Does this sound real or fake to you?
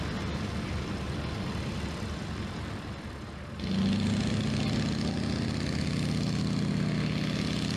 real